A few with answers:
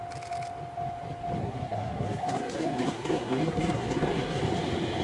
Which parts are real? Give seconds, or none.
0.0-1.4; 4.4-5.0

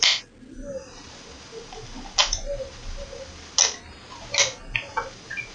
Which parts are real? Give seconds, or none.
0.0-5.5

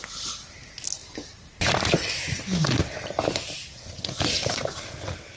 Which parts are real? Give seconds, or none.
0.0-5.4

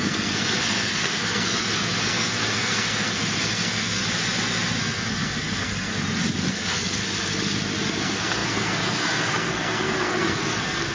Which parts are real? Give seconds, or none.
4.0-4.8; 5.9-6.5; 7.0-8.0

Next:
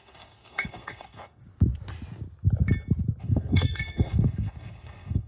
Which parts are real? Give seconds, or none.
1.4-3.2